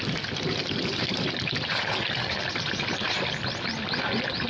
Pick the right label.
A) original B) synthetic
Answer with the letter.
A